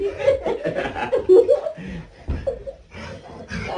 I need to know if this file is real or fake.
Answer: real